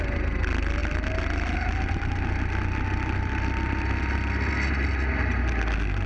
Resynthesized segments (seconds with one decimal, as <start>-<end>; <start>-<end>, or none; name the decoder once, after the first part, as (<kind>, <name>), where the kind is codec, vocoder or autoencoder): none